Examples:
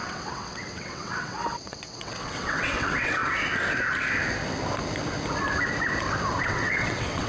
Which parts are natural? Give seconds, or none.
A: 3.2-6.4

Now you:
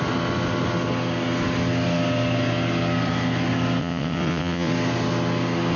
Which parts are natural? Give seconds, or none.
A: 0.0-3.8; 4.7-5.8

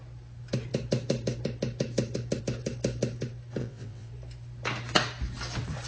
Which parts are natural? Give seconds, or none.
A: 0.0-3.6; 4.1-5.9

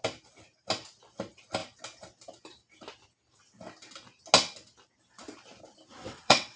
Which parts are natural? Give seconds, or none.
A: 0.0-6.0

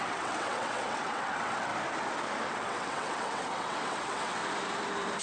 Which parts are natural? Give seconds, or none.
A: 1.7-2.5; 4.4-5.2